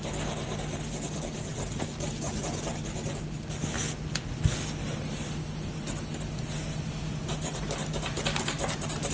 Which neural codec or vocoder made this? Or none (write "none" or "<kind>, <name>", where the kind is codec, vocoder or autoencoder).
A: none